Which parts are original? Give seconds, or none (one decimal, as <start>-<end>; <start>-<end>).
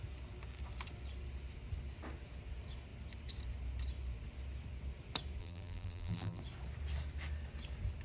0.0-5.4; 6.4-8.0